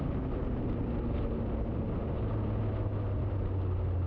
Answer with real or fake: real